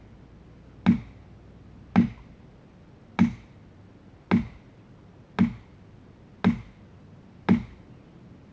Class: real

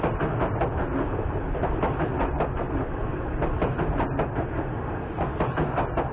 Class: real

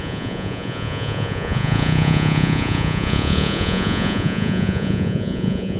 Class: fake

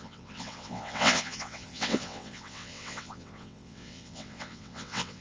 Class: fake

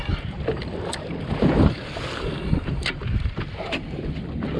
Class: real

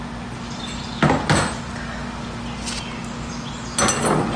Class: real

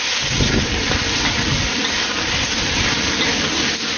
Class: real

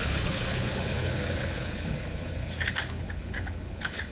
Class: fake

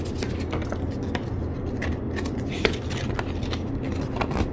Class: real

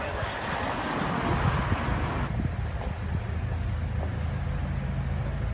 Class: real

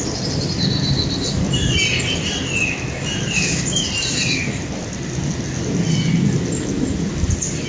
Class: real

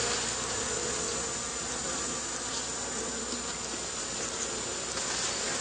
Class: real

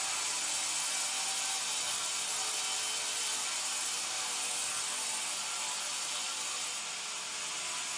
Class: real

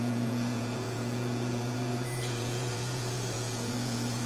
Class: fake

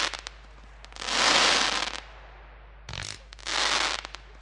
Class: real